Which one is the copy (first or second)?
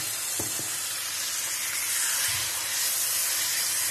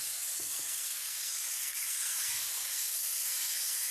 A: second